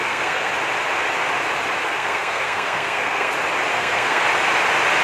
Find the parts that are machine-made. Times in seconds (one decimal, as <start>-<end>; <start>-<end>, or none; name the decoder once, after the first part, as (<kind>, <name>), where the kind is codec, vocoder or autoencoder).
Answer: 0.0-0.5 (codec, SNAC); 1.8-3.3; 3.7-4.2